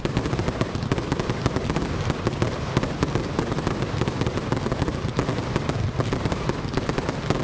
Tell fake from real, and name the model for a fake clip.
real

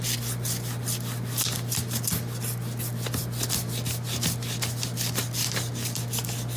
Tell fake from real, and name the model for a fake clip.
real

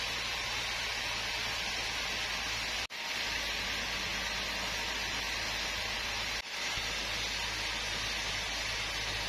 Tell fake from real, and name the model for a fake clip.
real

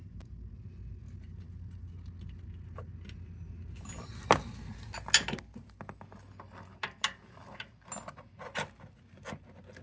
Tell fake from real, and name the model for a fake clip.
real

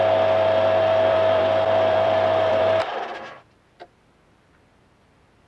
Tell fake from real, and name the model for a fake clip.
fake, vocoder, BigVGAN v2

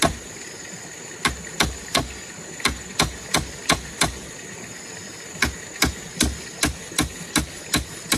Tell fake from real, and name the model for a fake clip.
real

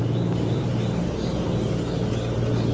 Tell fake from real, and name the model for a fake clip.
real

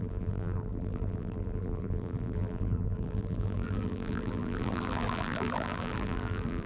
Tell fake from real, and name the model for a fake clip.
fake, vocoder, BigVGAN v2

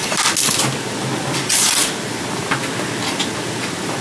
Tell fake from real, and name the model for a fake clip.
real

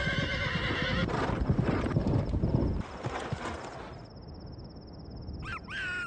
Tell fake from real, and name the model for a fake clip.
real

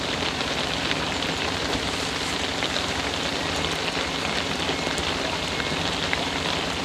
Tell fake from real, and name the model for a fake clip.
real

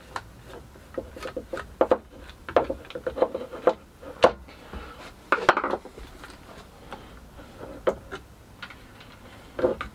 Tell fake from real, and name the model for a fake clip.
real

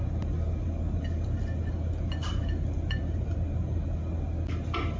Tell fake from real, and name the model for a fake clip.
real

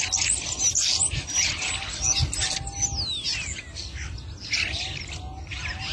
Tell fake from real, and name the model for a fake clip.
real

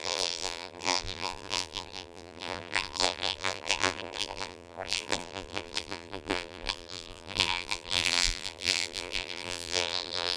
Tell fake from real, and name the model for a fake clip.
fake, vocoder, BigVGAN v2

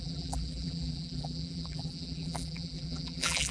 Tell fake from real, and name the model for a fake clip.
fake, vocoder, BigVGAN v2